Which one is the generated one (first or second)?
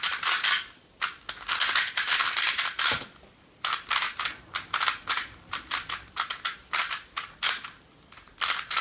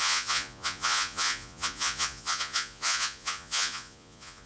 second